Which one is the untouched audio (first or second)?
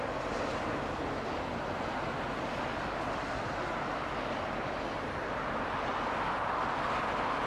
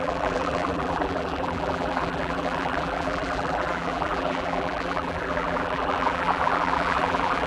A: first